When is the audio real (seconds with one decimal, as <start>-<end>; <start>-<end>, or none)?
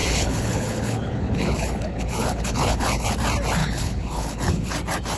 3.1-3.6; 4.7-5.2